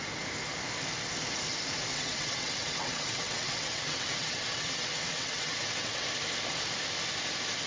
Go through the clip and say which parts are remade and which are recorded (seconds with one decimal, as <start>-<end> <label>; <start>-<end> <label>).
0.0-1.9 recorded; 1.9-6.1 remade; 6.1-7.7 recorded